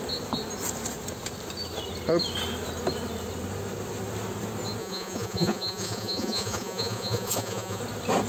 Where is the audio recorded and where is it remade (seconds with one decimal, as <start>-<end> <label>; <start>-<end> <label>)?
0.0-4.8 recorded; 4.8-7.8 remade; 7.8-8.3 recorded